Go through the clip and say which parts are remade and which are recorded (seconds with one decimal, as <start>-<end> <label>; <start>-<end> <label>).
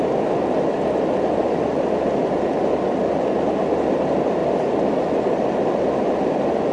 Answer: 0.0-6.7 recorded